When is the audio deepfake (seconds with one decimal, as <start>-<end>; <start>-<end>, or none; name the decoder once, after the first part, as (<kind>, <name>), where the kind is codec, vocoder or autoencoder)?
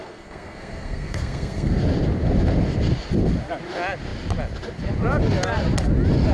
0.0-1.8 (codec, SNAC)